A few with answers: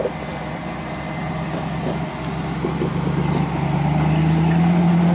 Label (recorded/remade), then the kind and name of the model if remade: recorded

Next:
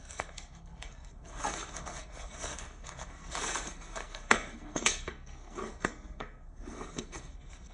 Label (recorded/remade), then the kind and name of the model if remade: remade, codec, SNAC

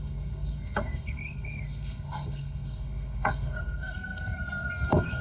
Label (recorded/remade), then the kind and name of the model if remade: remade, codec, SNAC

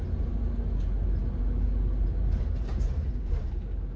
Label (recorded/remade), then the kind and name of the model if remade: recorded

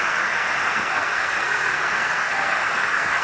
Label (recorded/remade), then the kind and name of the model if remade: remade, codec, SNAC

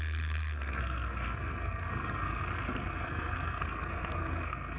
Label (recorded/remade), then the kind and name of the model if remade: remade, codec, SNAC